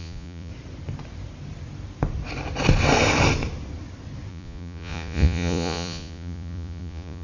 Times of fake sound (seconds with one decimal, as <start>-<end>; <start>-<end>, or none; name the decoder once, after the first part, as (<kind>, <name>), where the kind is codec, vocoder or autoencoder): 0.0-0.5 (vocoder, Vocos); 4.3-7.2